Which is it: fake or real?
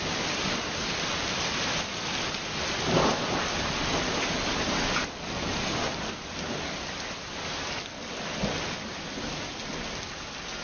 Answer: real